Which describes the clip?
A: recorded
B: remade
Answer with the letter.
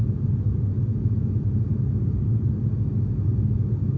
A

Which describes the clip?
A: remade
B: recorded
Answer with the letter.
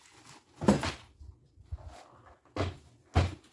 B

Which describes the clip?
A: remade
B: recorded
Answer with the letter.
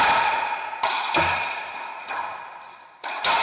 B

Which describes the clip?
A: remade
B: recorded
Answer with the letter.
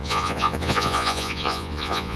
A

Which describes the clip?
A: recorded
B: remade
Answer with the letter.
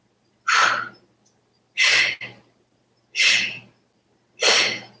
A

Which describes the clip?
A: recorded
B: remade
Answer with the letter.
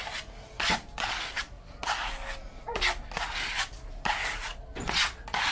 A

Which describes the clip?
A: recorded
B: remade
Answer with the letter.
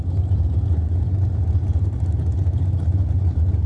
B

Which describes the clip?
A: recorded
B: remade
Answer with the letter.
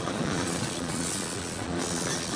B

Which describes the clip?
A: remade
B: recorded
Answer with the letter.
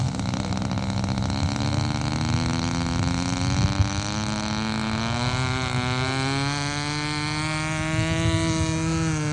B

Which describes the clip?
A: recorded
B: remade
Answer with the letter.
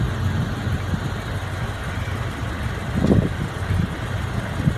A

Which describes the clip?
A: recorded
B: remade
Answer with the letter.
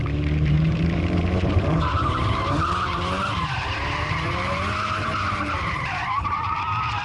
B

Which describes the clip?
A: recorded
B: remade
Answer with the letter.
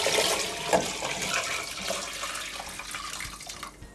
A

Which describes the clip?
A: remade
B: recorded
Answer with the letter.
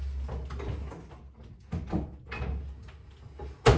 B